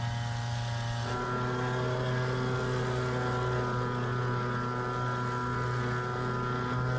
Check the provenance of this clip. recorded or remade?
recorded